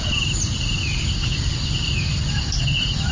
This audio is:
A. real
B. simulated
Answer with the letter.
A